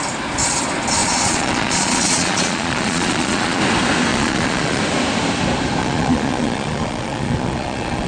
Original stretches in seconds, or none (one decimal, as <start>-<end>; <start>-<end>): 0.0-1.0; 3.6-4.1; 4.8-5.8